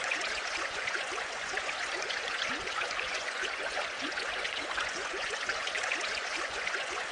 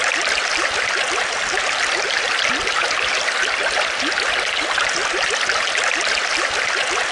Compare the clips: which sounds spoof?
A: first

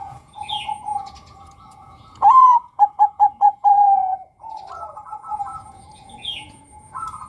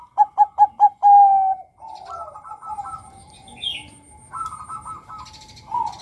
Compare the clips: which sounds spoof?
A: first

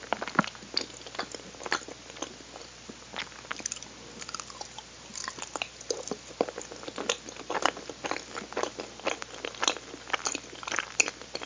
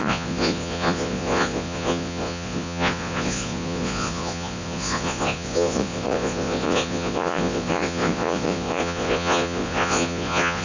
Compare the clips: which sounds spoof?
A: second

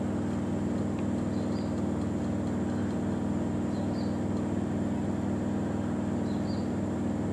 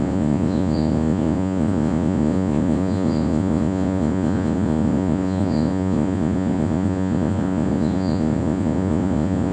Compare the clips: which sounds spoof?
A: second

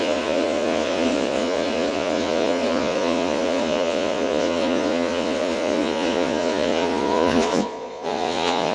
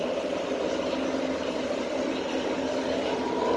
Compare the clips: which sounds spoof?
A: first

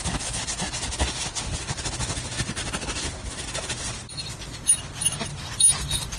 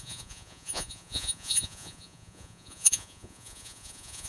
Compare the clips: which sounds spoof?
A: second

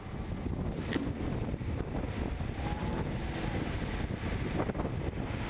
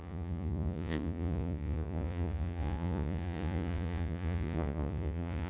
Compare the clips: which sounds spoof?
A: second